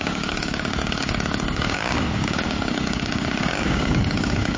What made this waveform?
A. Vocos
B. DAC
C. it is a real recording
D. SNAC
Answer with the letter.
B